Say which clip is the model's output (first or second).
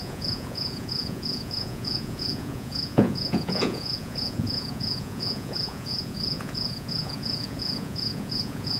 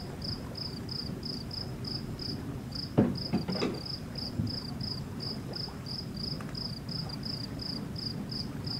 first